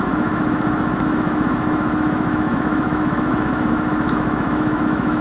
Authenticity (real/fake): fake